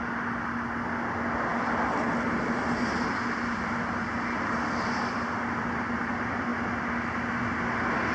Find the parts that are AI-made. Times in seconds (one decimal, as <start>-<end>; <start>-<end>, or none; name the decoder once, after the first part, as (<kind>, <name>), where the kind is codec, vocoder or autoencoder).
none